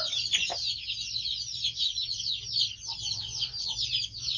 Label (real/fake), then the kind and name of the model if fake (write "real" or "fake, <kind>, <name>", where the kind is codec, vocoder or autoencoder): real